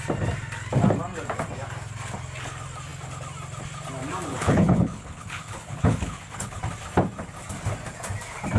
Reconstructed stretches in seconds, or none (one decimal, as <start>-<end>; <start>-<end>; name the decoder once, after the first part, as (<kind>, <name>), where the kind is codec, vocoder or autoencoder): 4.3-6.6 (codec, HILCodec)